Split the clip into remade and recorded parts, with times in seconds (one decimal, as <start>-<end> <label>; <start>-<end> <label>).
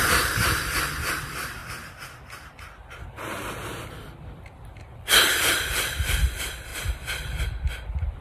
0.0-1.6 remade; 1.6-3.9 recorded; 3.9-6.7 remade; 6.7-7.4 recorded; 7.4-8.2 remade